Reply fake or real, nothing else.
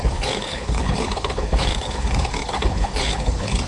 fake